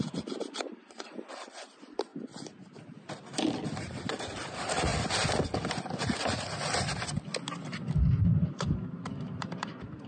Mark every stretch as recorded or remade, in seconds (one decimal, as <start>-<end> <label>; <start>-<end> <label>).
0.0-2.1 remade; 2.1-3.8 recorded; 3.8-4.9 remade; 4.9-8.3 recorded; 8.3-10.1 remade